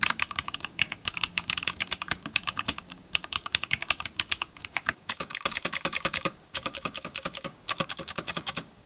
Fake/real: fake